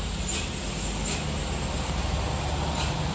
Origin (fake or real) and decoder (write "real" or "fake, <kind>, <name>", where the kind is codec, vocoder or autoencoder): real